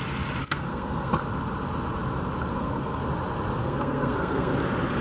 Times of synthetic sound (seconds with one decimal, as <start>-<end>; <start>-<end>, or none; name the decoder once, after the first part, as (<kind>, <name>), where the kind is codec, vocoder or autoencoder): 0.4-1.1 (codec, SNAC); 2.5-3.0; 3.6-4.5